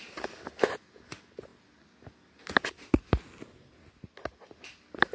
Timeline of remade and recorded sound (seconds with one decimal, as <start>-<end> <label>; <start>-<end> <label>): 0.0-5.1 recorded